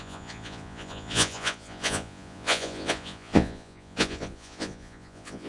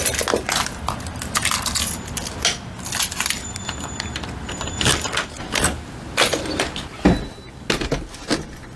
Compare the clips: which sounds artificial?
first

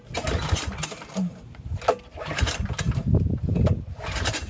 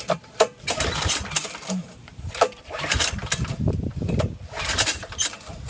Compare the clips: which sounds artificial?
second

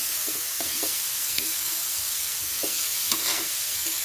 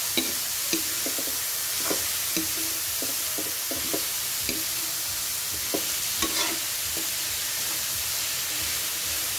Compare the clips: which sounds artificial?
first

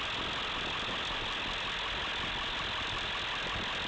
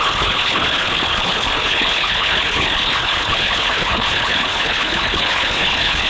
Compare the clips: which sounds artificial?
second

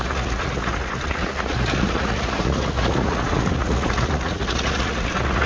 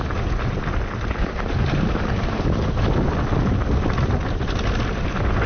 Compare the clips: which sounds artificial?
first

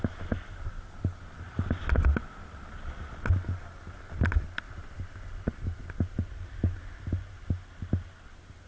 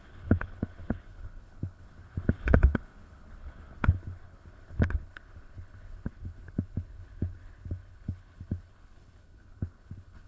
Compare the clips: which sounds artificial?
second